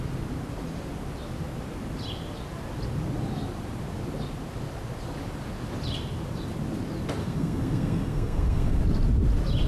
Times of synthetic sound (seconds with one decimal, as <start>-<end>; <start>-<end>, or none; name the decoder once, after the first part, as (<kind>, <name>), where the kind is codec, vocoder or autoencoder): 7.2-8.8 (codec, SNAC)